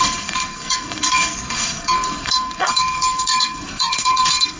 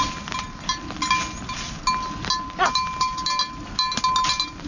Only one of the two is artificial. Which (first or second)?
first